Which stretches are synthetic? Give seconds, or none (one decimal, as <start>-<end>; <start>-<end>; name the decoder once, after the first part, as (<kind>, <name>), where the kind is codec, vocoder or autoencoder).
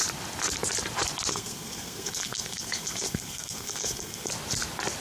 1.3-4.3 (codec, SNAC)